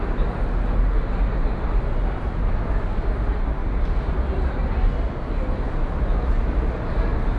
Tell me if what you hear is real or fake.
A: real